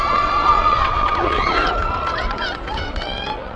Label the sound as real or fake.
fake